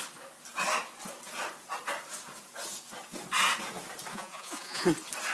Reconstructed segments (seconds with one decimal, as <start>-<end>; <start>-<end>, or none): 4.1-4.8